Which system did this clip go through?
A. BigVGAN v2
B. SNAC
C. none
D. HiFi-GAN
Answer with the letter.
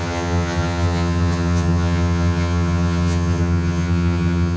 D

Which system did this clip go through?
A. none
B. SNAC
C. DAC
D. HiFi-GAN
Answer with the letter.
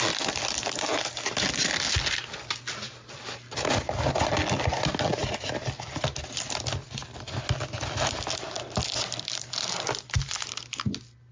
A